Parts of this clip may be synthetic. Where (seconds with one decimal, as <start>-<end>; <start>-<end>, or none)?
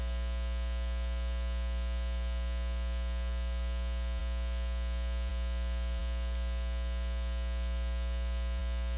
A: none